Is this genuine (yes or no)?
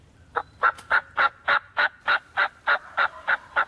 yes